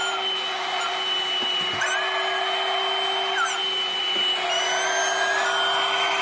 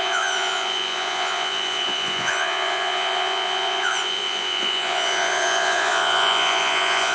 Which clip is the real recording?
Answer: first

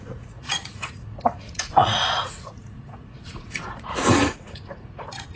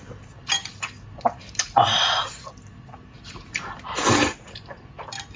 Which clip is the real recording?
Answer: second